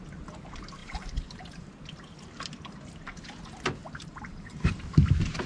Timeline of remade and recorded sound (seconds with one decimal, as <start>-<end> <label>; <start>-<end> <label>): 0.0-0.8 recorded; 0.8-1.7 remade; 1.7-3.8 recorded; 3.8-4.7 remade; 4.7-5.5 recorded